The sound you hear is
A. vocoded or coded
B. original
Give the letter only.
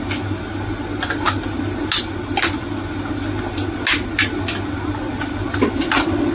B